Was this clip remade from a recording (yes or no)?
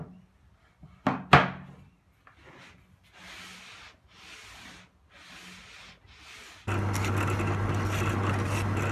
no